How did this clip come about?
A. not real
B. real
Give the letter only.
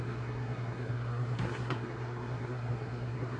A